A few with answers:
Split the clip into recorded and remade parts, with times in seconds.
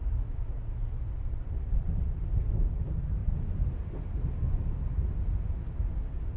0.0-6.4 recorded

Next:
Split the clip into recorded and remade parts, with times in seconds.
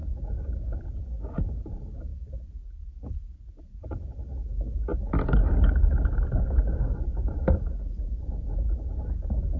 0.0-9.6 recorded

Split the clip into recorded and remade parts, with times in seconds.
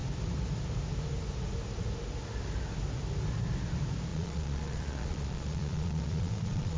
0.0-4.1 recorded; 4.1-6.8 remade